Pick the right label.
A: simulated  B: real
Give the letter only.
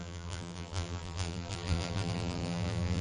A